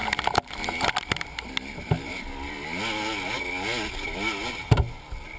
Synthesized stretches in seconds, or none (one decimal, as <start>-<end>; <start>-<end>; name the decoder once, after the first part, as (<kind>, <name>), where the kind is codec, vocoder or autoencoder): none